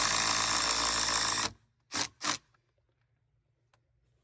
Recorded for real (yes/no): yes